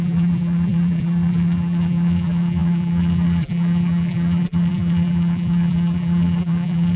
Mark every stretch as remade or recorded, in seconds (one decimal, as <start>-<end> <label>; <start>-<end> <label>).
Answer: 0.0-7.0 remade